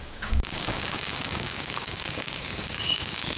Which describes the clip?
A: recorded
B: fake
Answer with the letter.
B